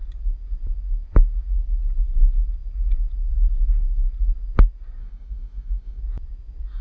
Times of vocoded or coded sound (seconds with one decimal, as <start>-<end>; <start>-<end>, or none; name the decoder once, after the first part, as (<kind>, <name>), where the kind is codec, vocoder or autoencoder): 5.0-6.0 (codec, DAC)